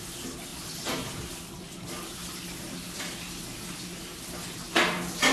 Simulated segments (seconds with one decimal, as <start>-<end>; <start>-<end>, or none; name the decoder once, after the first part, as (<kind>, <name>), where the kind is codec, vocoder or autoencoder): none